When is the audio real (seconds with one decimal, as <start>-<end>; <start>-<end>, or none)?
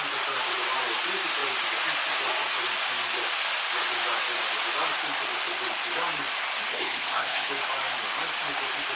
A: 0.0-6.7; 7.5-9.0